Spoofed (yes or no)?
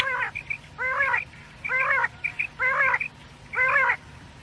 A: no